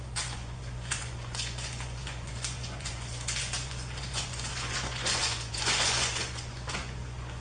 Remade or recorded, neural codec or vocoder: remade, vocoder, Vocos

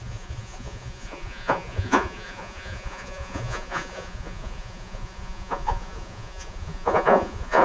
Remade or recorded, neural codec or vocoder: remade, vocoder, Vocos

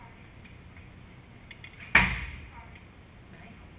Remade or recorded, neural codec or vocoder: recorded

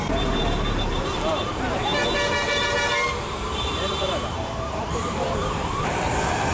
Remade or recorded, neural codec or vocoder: remade, vocoder, BigVGAN v2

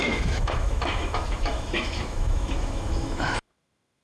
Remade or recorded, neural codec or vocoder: remade, autoencoder, DAC-VAE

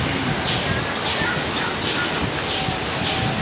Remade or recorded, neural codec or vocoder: recorded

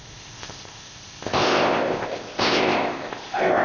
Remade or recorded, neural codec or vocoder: remade, codec, ZipCodec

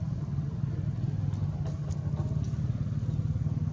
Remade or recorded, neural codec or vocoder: recorded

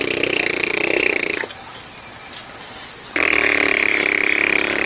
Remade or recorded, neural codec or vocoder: recorded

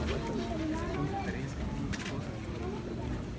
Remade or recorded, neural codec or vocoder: recorded